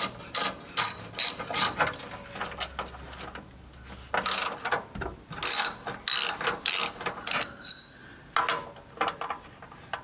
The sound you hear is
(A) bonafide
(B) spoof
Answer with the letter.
A